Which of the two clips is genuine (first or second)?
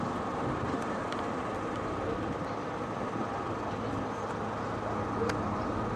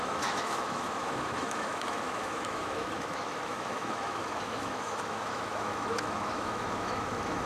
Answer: first